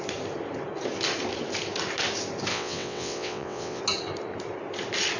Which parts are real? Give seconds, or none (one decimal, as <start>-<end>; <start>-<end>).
0.0-2.5; 3.8-5.2